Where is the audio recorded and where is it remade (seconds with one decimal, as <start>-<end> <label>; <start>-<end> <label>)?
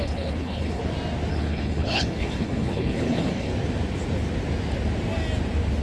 0.0-0.8 remade; 0.8-1.3 recorded; 1.3-3.5 remade; 3.5-5.8 recorded